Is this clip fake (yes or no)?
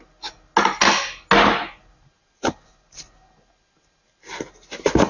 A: no